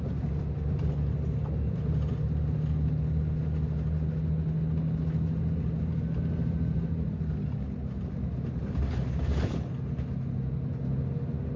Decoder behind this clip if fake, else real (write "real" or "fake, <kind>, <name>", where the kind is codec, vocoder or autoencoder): real